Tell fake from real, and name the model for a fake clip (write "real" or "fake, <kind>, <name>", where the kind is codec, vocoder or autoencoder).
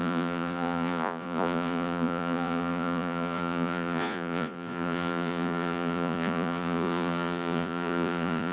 fake, vocoder, Vocos